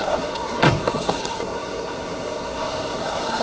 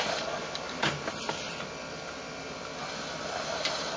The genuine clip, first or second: second